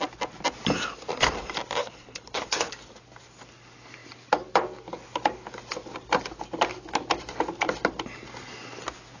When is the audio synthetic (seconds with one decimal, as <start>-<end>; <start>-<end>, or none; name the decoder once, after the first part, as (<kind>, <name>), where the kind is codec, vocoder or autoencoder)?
1.8-2.7 (codec, HILCodec)

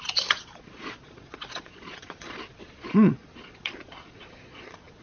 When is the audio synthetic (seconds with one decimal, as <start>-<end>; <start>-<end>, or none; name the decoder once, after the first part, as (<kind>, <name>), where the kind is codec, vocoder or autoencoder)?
0.0-5.0 (vocoder, Vocos)

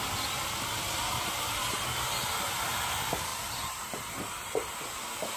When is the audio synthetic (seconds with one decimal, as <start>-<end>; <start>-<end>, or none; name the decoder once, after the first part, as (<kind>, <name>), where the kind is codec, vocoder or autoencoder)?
3.3-4.1 (vocoder, BigVGAN v2)

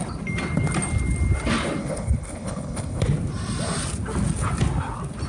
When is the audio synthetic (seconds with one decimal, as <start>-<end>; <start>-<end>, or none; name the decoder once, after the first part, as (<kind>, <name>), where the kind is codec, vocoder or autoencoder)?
1.8-3.0 (codec, HILCodec)

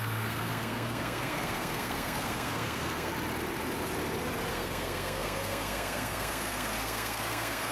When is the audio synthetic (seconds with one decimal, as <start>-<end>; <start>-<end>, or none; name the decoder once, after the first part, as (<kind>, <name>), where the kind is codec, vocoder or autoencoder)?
0.0-3.1 (codec, SNAC); 4.5-7.7

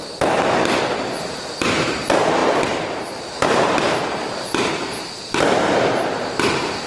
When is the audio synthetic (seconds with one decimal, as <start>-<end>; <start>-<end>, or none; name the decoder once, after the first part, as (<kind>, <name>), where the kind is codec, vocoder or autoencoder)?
0.0-6.9 (vocoder, BigVGAN v2)